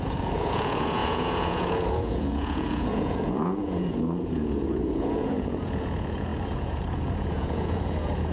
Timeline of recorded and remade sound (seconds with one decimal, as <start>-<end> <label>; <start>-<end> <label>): 0.0-8.3 remade